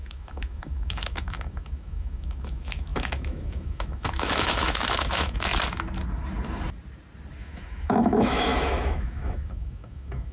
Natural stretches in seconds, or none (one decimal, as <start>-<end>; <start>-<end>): 5.5-7.4